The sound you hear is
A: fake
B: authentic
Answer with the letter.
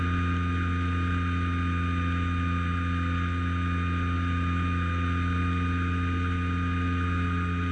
B